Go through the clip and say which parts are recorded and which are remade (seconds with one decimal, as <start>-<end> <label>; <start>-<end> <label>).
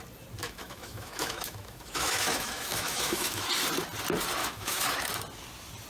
0.0-0.4 recorded; 0.4-3.5 remade; 3.5-4.4 recorded; 4.4-5.1 remade; 5.1-5.9 recorded